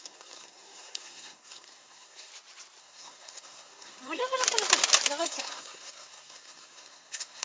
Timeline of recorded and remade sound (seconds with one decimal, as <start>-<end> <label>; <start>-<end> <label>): 0.0-2.3 remade; 2.3-2.8 recorded; 2.8-4.2 remade; 4.2-5.2 recorded; 5.2-7.4 remade